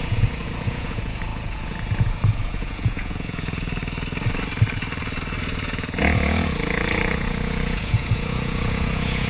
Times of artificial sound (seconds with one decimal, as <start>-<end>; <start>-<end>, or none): 0.0-3.8; 5.4-9.3